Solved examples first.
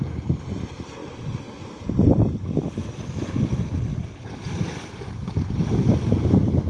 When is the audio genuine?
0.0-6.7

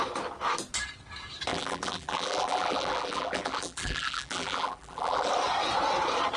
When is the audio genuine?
0.0-1.5; 5.3-6.4

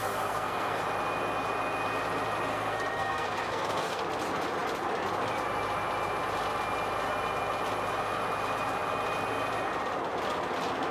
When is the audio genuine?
0.8-2.5; 4.0-10.9

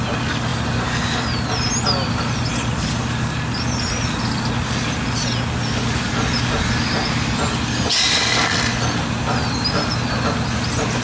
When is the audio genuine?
0.0-11.0